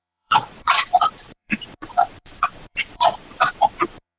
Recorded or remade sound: remade